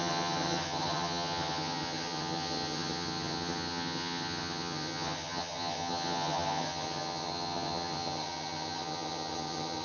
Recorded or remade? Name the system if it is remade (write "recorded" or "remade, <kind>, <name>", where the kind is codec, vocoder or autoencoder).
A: remade, vocoder, HiFi-GAN